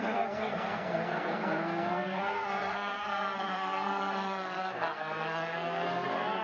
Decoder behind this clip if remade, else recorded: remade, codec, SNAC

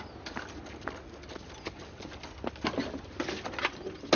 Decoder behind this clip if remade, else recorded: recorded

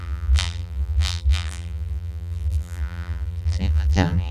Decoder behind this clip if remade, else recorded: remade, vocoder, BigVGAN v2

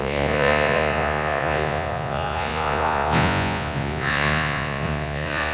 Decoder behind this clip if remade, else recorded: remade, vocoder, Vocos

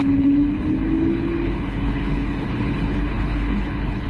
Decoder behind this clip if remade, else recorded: remade, codec, HILCodec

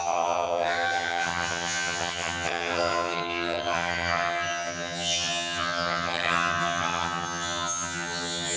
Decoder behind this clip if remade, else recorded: remade, vocoder, HiFi-GAN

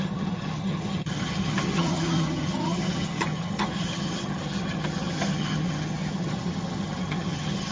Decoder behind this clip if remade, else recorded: remade, vocoder, HiFi-GAN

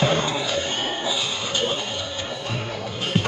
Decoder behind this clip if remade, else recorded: remade, codec, SNAC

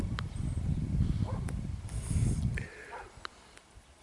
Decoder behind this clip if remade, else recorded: remade, vocoder, BigVGAN v2